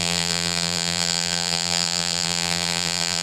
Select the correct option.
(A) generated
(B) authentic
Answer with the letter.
A